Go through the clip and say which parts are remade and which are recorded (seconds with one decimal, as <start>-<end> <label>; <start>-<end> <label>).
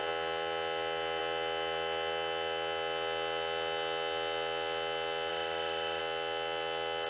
0.0-5.3 recorded; 5.3-6.0 remade; 6.0-7.1 recorded